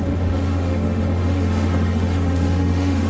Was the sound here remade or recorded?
remade